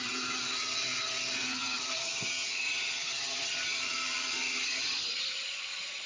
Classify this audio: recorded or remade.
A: remade